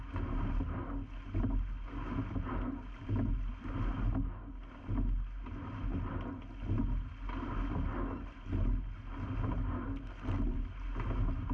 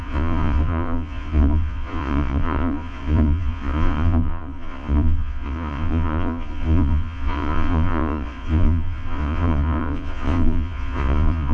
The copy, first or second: second